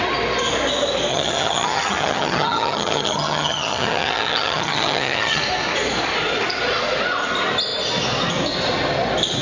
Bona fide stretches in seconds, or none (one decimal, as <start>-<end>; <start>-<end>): 0.0-1.1; 5.4-9.4